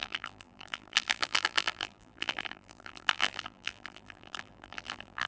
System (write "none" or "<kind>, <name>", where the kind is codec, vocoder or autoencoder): vocoder, BigVGAN v2